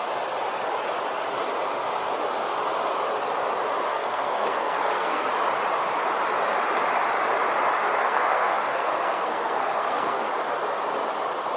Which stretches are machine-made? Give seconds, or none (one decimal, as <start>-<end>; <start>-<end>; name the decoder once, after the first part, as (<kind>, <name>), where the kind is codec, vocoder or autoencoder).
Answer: 3.9-5.3 (codec, SNAC); 8.0-10.3